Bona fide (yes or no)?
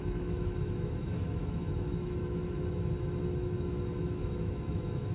no